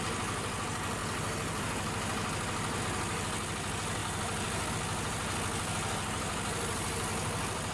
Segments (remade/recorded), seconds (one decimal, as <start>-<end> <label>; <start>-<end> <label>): 0.0-4.0 recorded; 4.0-4.7 remade; 4.7-7.1 recorded; 7.1-7.7 remade

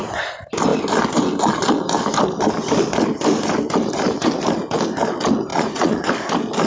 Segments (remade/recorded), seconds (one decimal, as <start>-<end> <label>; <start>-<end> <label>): 0.0-5.5 recorded; 5.5-6.1 remade; 6.1-6.7 recorded

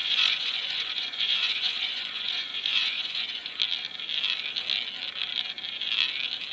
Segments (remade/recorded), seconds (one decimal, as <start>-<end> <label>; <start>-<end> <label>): 0.0-3.6 remade; 3.6-6.5 recorded

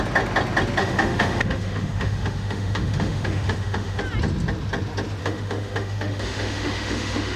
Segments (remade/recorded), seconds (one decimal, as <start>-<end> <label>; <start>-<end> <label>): 0.0-0.8 recorded; 0.8-4.0 remade; 4.0-5.2 recorded; 5.2-7.4 remade

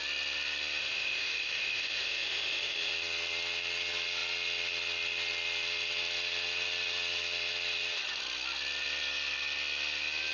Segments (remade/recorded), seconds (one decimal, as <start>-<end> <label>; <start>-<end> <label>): 0.0-0.8 recorded; 0.8-2.9 remade; 2.9-10.3 recorded

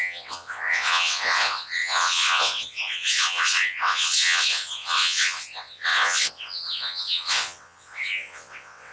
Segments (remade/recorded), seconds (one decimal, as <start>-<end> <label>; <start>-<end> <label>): 0.0-8.9 remade

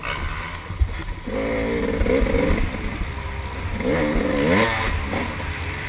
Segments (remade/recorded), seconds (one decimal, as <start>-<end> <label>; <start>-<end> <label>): 0.0-5.9 recorded